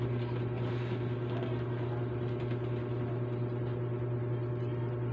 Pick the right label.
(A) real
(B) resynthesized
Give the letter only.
A